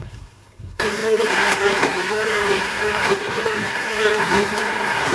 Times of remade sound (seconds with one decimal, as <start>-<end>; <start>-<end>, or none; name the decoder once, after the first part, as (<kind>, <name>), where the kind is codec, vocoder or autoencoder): 0.0-5.1 (codec, SNAC)